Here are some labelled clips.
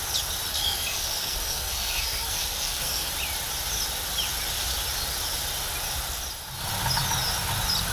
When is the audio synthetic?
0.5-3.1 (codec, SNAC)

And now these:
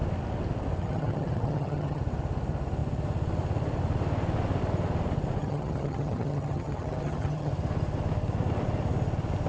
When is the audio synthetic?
0.8-2.0 (vocoder, HiFi-GAN); 5.4-7.5

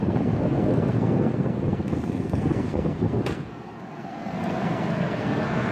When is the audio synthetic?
0.0-5.7 (codec, SNAC)